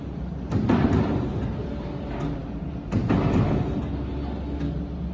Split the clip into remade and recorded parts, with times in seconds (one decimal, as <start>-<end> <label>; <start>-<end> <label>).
0.0-5.1 recorded